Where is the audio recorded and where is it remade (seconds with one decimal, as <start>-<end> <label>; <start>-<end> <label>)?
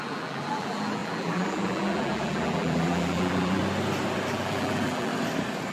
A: 0.0-3.6 remade; 3.6-4.3 recorded; 4.3-5.1 remade; 5.1-5.7 recorded